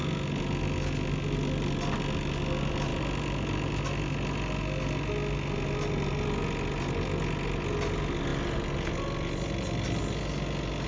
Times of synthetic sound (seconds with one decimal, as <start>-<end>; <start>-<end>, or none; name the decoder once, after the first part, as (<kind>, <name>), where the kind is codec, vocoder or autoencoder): none